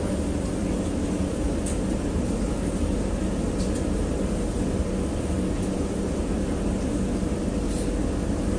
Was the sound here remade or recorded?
recorded